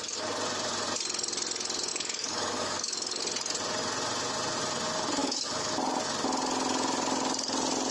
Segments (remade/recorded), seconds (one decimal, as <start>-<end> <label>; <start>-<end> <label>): 0.0-1.9 recorded; 1.9-3.2 remade; 3.2-5.2 recorded; 5.2-5.7 remade; 5.7-7.9 recorded